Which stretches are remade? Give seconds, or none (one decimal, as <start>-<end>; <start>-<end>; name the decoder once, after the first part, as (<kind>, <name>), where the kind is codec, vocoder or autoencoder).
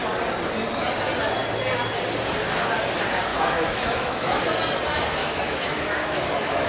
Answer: 3.3-4.4 (autoencoder, DAC-VAE); 5.2-6.7